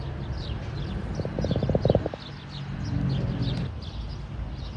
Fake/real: real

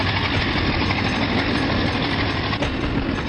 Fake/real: real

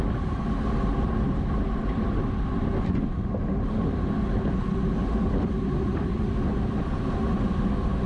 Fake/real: real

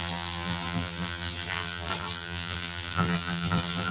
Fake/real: fake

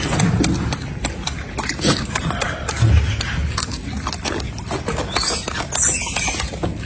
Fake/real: real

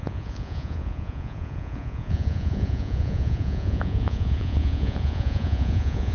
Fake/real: fake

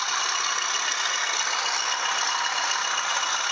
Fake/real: real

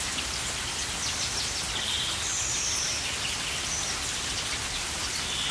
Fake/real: real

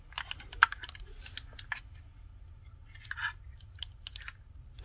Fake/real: real